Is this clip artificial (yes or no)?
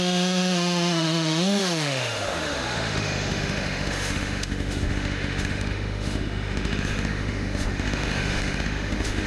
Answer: yes